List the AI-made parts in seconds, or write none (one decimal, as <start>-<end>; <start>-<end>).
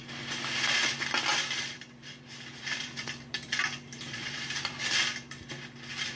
1.3-5.0